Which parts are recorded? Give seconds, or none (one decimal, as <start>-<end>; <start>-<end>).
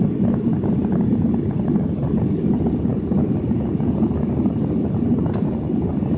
0.0-0.8; 2.2-2.9; 4.3-6.2